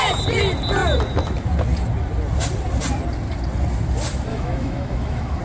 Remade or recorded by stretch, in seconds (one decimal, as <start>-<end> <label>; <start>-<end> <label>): 0.0-4.3 recorded; 4.3-5.4 remade